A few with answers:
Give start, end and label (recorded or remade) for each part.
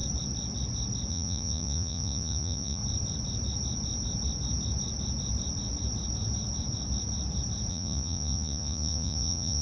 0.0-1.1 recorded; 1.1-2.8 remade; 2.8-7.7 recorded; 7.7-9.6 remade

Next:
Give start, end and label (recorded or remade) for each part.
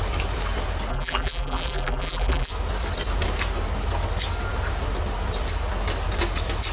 0.0-0.9 recorded; 0.9-2.5 remade; 2.5-6.7 recorded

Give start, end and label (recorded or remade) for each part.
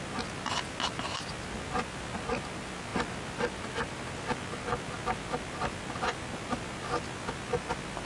0.0-8.1 recorded